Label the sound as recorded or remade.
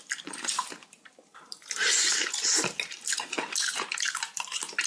remade